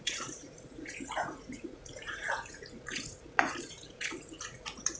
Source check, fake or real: fake